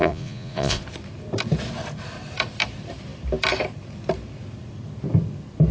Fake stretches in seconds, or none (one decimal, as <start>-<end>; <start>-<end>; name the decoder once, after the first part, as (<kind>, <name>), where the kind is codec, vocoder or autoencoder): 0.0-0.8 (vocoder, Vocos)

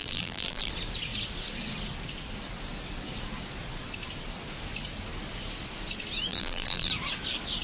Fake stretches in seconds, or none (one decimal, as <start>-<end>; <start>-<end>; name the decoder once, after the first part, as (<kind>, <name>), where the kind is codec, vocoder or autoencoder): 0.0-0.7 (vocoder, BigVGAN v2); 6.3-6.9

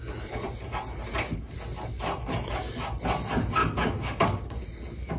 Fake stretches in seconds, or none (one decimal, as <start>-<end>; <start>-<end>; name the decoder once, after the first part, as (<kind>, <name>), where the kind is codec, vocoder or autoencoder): 3.6-4.2 (codec, DAC)

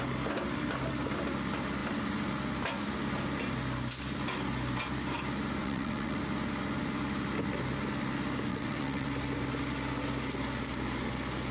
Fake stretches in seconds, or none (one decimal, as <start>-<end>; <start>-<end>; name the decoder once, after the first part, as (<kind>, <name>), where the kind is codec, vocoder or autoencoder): 5.6-6.2 (vocoder, WaveNeXt); 8.5-9.1

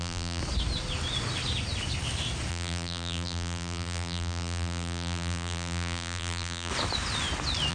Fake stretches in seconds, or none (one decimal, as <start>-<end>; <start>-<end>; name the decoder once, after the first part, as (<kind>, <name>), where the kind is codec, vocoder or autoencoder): 0.0-0.4 (vocoder, BigVGAN v2); 2.5-6.7